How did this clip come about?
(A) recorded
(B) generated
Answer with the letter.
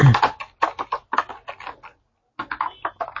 A